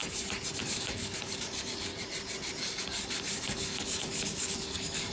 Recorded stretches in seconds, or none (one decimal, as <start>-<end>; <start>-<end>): 0.0-0.6; 1.9-2.6